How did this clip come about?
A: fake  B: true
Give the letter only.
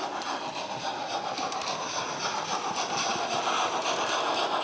B